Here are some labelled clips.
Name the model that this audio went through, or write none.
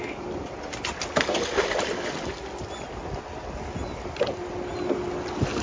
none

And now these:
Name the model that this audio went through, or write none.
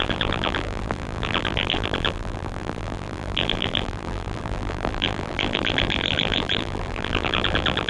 vocoder, BigVGAN v2